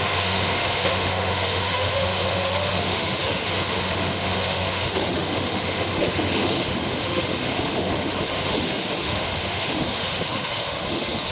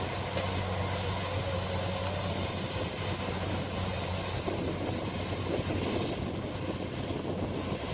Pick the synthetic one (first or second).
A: first